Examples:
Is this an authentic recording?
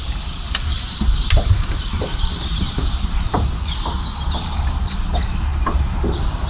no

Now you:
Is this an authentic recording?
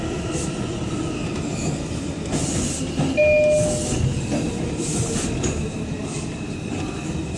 yes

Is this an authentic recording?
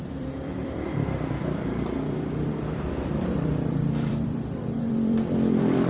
no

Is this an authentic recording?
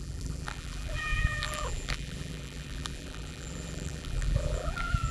no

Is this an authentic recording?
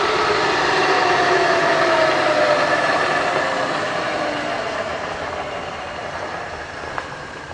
no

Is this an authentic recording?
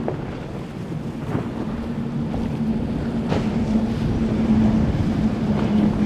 yes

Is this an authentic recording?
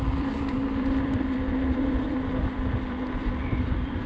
no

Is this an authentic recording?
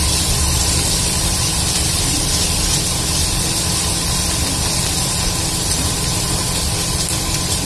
no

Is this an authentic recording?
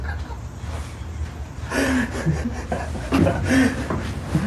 yes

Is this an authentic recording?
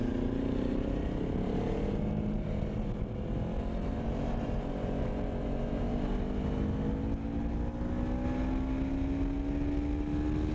yes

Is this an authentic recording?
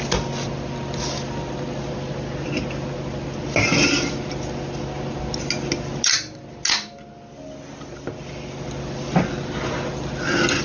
yes